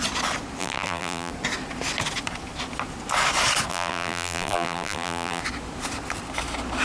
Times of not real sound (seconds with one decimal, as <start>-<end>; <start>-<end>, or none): 0.6-1.3; 3.7-5.4

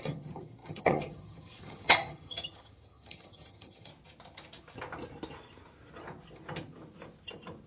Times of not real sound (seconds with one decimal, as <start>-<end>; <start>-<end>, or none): 0.0-3.9